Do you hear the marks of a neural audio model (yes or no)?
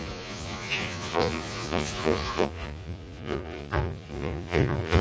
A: yes